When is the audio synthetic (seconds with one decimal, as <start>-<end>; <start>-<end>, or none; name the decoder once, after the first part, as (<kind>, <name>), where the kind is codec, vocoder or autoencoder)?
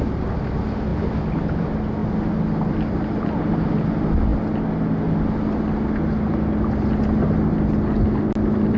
none